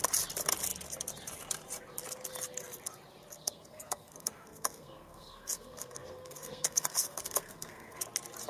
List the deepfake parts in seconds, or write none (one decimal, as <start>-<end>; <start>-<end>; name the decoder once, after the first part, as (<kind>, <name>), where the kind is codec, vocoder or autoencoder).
3.4-8.0 (codec, SNAC)